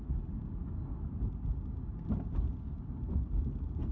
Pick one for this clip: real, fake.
real